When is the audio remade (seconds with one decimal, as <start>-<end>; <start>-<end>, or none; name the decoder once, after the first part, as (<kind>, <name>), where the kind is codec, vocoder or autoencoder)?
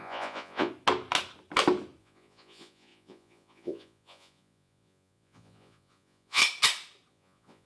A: 0.0-0.7 (vocoder, Vocos); 2.0-6.4; 7.1-7.7